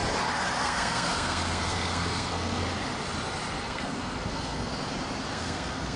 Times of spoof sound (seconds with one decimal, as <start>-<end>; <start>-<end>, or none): 0.6-2.6; 3.6-4.7; 5.3-6.0

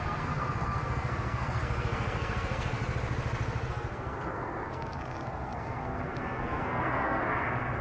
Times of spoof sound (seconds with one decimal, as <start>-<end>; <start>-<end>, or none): 0.0-2.8; 3.7-7.8